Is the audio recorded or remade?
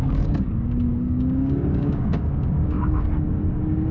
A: remade